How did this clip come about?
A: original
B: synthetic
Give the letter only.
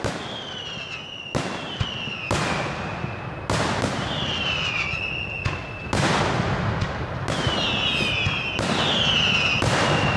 A